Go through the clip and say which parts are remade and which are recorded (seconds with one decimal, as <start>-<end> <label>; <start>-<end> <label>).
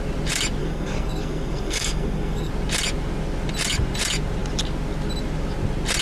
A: 0.0-0.6 recorded; 0.6-2.5 remade; 2.5-6.0 recorded